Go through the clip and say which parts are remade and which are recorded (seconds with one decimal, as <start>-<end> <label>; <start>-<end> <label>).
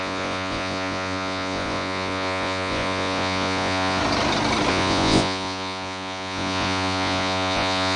0.0-4.0 remade; 4.0-4.7 recorded; 4.7-8.0 remade